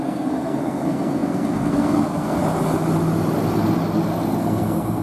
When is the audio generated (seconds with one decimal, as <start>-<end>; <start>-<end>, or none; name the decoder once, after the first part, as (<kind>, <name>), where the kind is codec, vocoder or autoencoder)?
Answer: 0.0-2.4 (codec, SNAC); 4.4-5.0